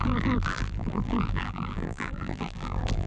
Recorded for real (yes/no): no